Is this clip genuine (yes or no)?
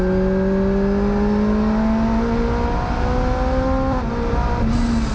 yes